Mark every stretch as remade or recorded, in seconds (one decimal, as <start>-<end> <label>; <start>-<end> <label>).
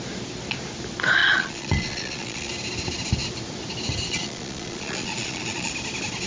0.0-1.2 recorded; 1.2-2.5 remade; 2.5-4.1 recorded; 4.1-5.7 remade; 5.7-6.3 recorded